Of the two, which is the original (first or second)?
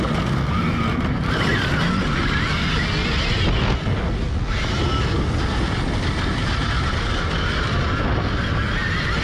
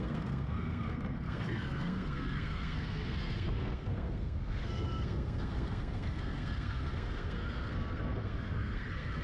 first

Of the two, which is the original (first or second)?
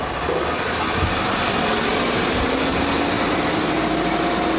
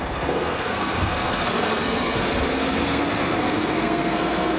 first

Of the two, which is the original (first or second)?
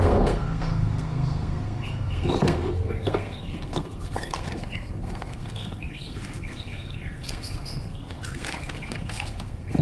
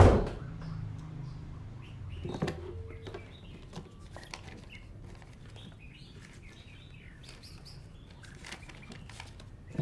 second